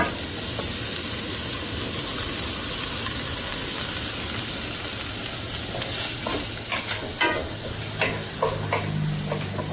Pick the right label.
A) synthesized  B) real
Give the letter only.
B